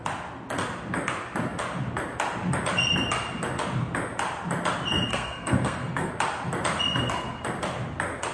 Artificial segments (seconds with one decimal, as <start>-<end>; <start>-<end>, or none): 5.1-6.1